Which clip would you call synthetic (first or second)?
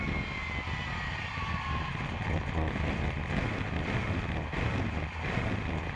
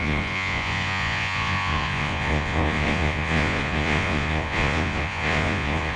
second